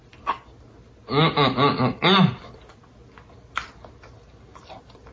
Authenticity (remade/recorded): recorded